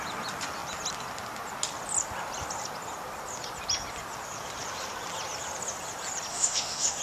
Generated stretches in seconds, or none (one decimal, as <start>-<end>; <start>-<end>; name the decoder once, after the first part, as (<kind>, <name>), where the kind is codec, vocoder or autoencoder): 6.3-7.0 (autoencoder, DAC-VAE)